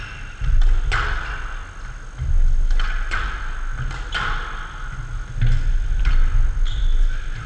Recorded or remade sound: recorded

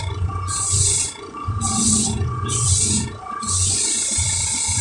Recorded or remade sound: remade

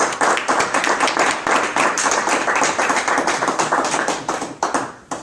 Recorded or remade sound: recorded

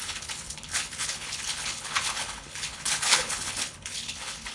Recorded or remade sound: remade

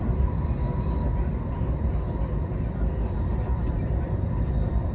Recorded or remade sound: remade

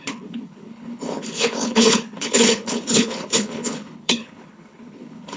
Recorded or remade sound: remade